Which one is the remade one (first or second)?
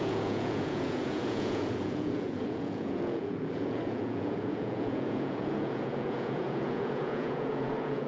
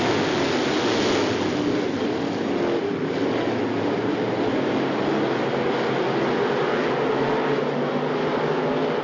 first